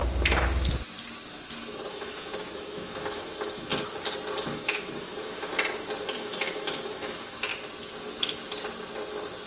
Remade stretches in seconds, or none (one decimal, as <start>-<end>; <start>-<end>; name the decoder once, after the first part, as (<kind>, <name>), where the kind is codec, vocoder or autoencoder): 1.9-3.7 (autoencoder, DAC-VAE); 4.4-5.5; 6.0-7.5